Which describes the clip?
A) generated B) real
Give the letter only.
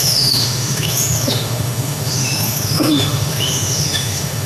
A